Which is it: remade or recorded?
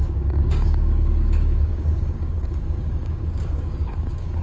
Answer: remade